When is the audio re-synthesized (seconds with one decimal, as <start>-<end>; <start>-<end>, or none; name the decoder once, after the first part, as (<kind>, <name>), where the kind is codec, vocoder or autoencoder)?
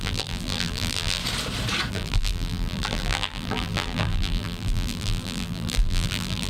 0.0-1.2 (vocoder, BigVGAN v2); 1.9-6.5